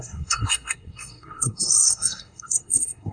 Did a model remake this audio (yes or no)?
yes